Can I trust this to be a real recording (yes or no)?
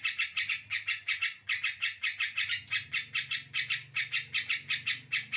yes